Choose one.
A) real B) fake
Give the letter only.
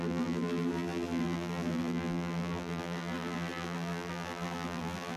B